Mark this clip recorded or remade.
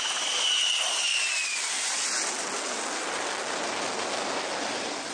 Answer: recorded